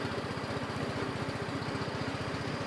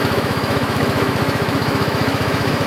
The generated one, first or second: second